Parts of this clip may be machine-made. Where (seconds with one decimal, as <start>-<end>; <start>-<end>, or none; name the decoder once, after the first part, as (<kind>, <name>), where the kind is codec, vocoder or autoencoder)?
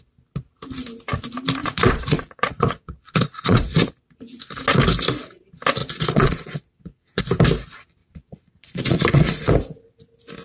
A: 1.6-3.9 (vocoder, Vocos); 5.8-7.2; 8.0-9.5